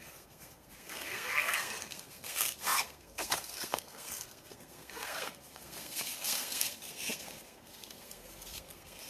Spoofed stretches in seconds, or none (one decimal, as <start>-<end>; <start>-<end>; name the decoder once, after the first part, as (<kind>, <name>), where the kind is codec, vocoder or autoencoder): 0.0-9.1 (codec, SNAC)